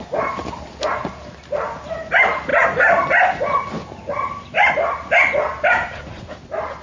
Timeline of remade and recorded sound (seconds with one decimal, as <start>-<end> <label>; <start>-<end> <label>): 0.0-0.4 recorded; 0.4-2.1 remade; 2.1-2.5 recorded; 2.5-3.4 remade; 3.4-3.8 recorded; 3.8-6.1 remade; 6.1-6.8 recorded